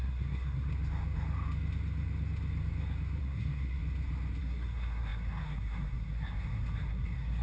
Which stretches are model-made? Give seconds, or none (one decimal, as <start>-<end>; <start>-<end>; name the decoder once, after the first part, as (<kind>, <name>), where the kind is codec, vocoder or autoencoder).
0.0-0.7 (codec, SNAC); 3.2-3.8; 4.4-7.4